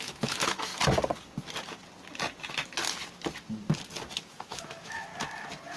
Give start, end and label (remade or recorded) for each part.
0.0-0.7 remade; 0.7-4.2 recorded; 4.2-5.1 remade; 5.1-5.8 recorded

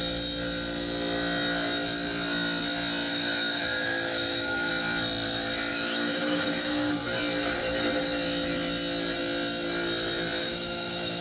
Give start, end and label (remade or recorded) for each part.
0.0-3.1 recorded; 3.1-4.7 remade; 4.7-5.7 recorded; 5.7-6.9 remade; 6.9-10.4 recorded; 10.4-11.2 remade

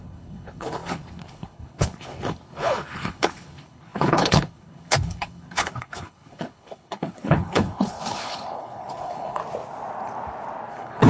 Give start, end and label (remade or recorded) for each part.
0.0-9.4 remade; 9.4-10.7 recorded; 10.7-11.1 remade